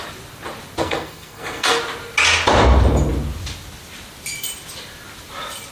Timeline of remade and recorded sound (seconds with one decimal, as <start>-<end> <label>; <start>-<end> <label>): 0.0-0.8 recorded; 0.8-1.8 remade; 1.8-5.7 recorded